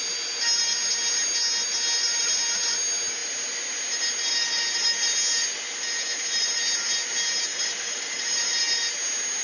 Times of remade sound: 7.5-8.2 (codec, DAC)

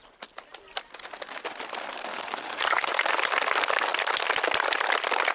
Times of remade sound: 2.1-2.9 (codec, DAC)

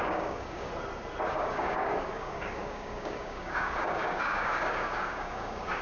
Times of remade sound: 0.0-0.7 (codec, DAC); 1.3-5.8